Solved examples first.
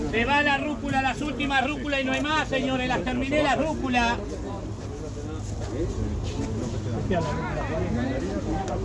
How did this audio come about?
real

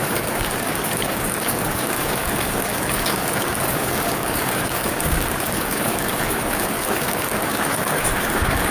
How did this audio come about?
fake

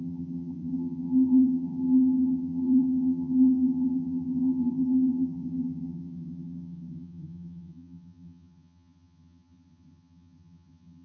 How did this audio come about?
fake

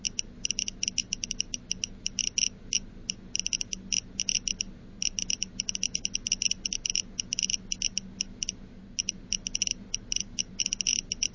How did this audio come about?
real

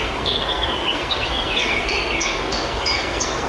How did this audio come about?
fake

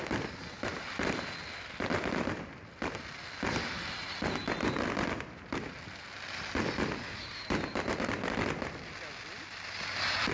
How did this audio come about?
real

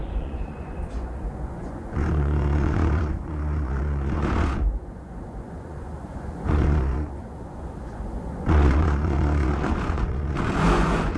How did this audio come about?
fake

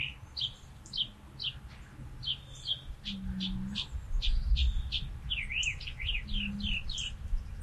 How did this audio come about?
real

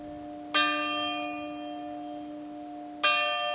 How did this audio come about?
real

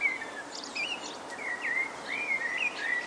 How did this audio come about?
real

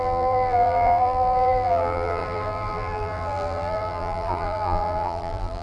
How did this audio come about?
fake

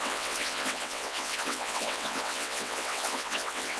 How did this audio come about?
fake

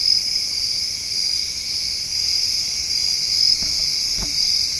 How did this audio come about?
real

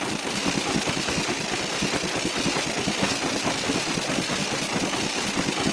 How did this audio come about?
real